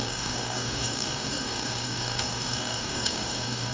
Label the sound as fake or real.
fake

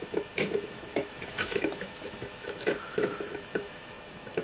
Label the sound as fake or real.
fake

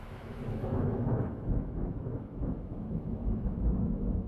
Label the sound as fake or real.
fake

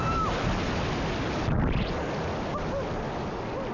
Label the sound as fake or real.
real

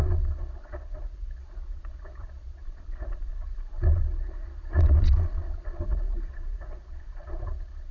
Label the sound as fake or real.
fake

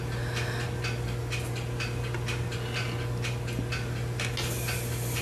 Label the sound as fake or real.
real